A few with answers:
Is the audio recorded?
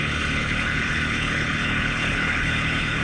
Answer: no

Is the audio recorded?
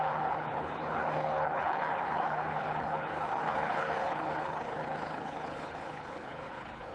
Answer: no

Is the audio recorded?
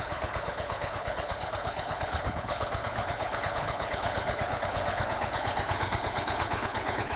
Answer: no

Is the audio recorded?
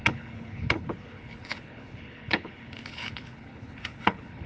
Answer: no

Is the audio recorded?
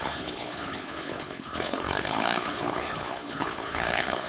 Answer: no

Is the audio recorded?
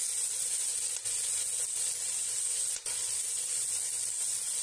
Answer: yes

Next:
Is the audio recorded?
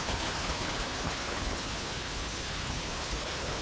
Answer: no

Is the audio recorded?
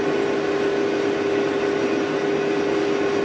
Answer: yes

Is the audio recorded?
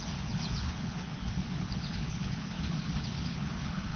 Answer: no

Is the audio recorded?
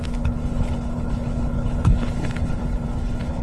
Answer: no